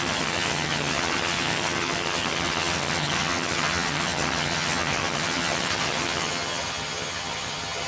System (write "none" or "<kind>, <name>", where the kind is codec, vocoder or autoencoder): vocoder, HiFi-GAN